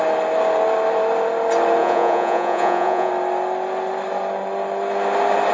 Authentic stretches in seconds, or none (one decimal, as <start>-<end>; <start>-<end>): 0.0-1.8; 3.1-5.5